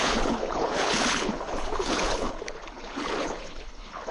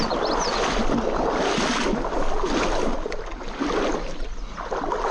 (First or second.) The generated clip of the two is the first